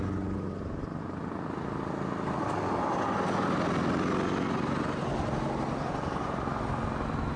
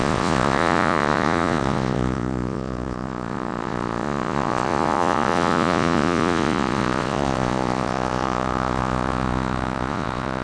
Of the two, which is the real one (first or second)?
first